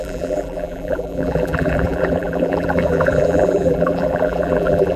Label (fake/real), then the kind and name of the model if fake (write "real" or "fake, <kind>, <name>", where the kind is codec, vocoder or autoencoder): fake, vocoder, BigVGAN v2